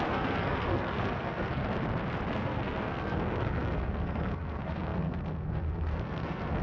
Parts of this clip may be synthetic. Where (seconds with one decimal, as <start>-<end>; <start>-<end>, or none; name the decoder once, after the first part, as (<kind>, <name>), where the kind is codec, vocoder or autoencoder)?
0.0-1.6 (codec, SNAC); 2.3-6.6